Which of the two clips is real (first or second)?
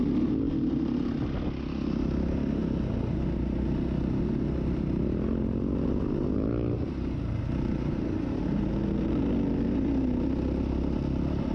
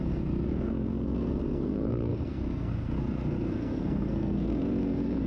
first